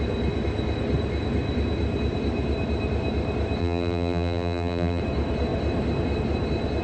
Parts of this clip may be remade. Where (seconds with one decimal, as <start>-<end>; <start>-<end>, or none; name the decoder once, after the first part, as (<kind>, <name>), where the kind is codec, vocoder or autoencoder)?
3.6-5.0 (vocoder, BigVGAN v2)